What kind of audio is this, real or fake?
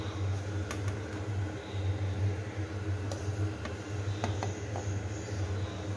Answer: real